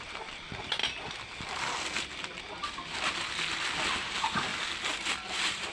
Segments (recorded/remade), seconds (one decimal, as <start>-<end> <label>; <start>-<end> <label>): 0.0-0.8 remade; 0.8-4.0 recorded; 4.0-4.5 remade; 4.5-5.3 recorded; 5.3-5.7 remade

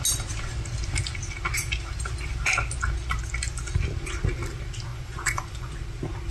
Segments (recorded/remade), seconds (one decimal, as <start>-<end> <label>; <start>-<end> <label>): 0.0-4.9 recorded; 4.9-5.7 remade; 5.7-6.3 recorded

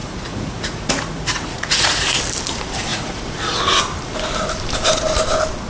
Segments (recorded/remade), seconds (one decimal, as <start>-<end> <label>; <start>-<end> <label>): 0.0-2.2 remade; 2.2-2.9 recorded; 2.9-3.6 remade; 3.6-5.7 recorded

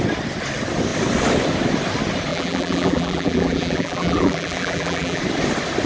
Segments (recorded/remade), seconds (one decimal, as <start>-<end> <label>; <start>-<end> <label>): 0.0-2.3 recorded; 2.3-5.2 remade; 5.2-5.9 recorded

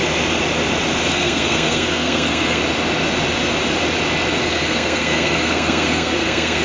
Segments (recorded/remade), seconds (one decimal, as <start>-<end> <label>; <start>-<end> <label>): 0.0-1.1 recorded; 1.1-2.6 remade; 2.6-4.4 recorded; 4.4-6.6 remade

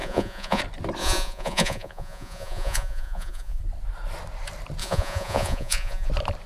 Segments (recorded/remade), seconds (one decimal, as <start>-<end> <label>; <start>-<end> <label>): 0.0-0.6 remade; 0.6-1.0 recorded; 1.0-3.6 remade; 3.6-4.8 recorded; 4.8-6.1 remade; 6.1-6.5 recorded

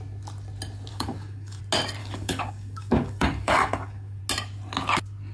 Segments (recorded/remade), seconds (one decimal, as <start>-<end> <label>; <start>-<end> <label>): 0.0-0.9 recorded; 0.9-1.6 remade; 1.6-2.0 recorded; 2.0-4.2 remade; 4.2-5.3 recorded

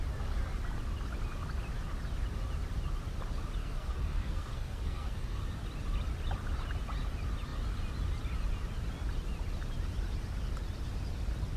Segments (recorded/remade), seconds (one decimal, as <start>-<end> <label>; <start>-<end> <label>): 0.0-3.6 recorded; 3.6-5.4 remade; 5.4-11.6 recorded